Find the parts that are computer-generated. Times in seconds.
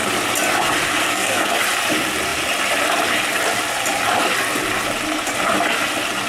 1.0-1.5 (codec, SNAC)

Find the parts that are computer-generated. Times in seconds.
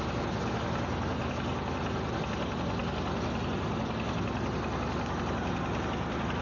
none